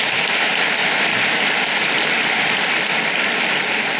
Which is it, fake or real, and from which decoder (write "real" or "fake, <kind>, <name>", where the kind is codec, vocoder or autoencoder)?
fake, vocoder, BigVGAN v2